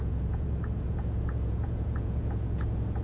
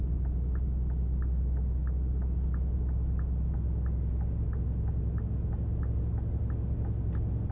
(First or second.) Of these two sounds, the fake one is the first